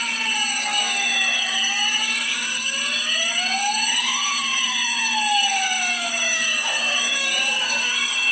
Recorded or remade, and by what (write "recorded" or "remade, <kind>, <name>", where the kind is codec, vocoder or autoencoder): remade, codec, DAC